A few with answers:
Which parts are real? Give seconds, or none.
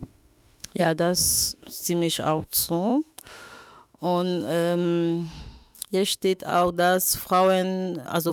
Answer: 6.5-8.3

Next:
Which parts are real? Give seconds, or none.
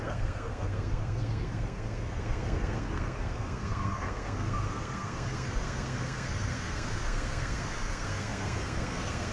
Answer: none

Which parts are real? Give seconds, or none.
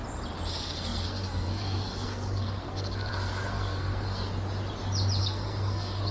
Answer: 0.0-0.5; 4.3-5.2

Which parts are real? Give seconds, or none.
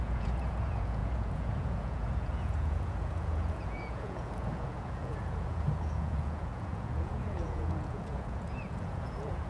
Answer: none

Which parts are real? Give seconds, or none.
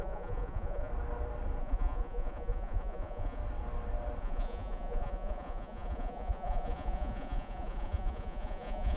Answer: 0.9-1.6; 3.4-4.2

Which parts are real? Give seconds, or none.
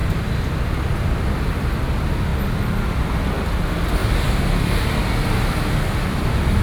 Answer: 0.0-6.6